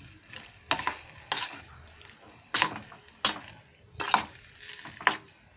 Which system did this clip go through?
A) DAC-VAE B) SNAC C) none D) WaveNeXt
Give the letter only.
C